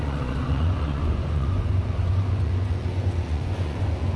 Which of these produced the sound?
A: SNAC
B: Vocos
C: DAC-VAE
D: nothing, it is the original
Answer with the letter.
B